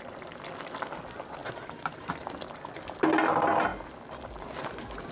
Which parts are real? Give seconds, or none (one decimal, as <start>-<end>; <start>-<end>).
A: 0.0-1.4; 2.1-5.1